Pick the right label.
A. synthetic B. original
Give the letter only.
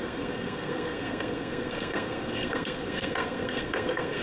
A